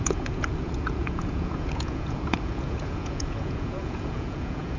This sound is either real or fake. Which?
fake